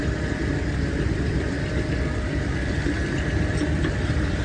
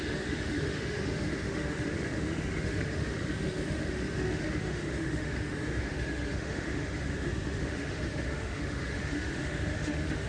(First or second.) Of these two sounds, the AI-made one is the second